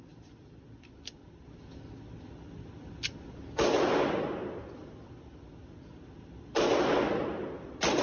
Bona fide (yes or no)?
yes